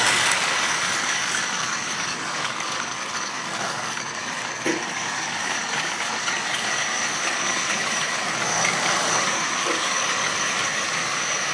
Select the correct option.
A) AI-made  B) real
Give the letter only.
A